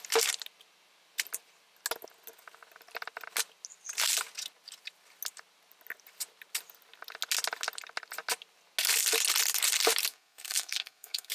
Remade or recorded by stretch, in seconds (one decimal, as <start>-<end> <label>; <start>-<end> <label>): 0.0-10.1 recorded; 10.1-11.3 remade